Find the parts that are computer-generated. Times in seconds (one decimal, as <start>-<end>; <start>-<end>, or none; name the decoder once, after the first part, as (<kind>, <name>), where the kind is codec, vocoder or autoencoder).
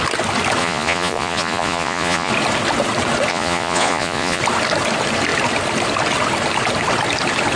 0.6-2.3 (vocoder, Vocos); 3.3-4.4